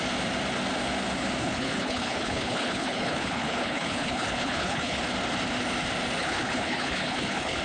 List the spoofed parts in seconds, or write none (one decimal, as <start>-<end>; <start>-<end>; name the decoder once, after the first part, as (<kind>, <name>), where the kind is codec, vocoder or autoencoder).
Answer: 1.4-5.0 (codec, HILCodec); 6.2-7.6